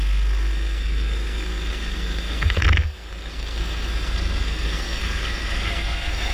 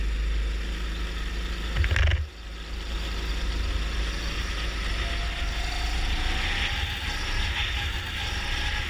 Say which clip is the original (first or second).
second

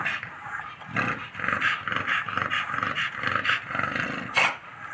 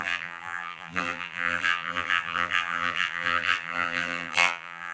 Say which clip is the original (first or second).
first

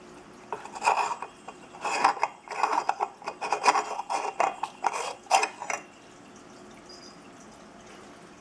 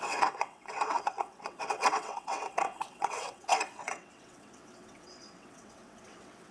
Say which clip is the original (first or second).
first